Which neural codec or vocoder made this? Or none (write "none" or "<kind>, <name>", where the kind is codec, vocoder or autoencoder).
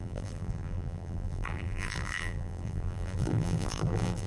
vocoder, BigVGAN v2